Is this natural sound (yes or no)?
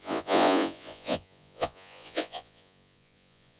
no